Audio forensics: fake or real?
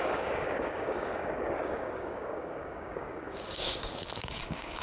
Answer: fake